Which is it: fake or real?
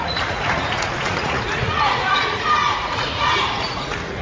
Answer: fake